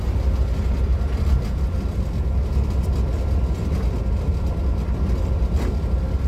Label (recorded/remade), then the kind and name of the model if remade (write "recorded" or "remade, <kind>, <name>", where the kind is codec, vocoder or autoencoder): recorded